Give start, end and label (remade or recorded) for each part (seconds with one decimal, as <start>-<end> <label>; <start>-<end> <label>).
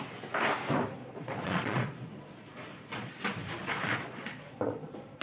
0.0-1.0 recorded; 1.0-3.1 remade; 3.1-3.6 recorded; 3.6-5.2 remade